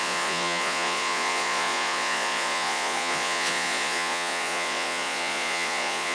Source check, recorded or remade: remade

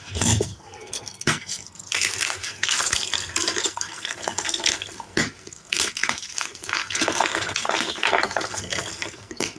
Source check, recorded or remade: remade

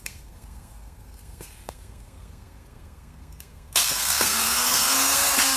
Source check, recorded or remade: remade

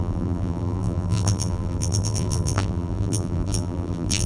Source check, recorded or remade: remade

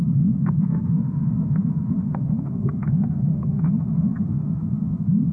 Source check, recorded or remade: remade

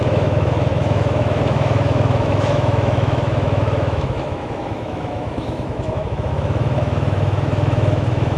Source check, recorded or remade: remade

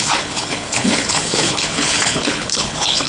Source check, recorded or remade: remade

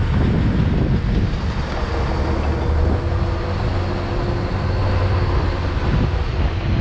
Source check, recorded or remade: recorded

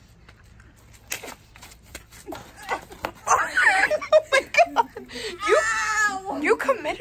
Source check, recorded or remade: recorded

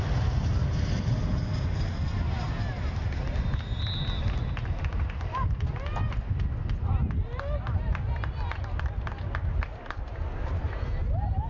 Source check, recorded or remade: recorded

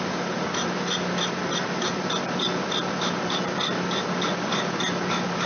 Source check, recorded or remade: recorded